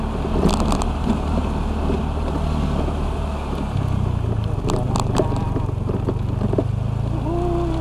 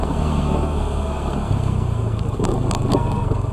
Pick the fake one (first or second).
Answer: second